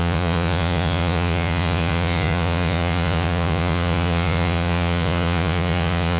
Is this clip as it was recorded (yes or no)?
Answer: no